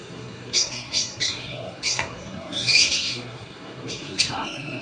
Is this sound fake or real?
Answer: fake